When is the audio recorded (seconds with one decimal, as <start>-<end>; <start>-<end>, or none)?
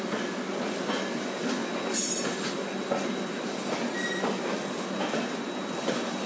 0.0-6.3